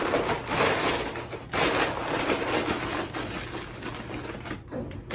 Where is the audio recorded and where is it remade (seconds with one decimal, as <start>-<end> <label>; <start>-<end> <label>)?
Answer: 0.0-5.1 recorded